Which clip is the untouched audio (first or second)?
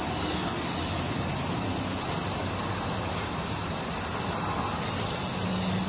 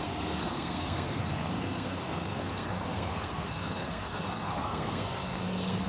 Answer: first